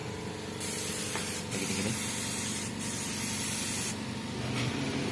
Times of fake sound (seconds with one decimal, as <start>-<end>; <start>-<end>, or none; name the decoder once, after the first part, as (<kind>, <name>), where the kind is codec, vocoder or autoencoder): none